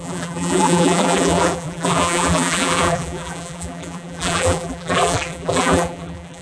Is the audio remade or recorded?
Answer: remade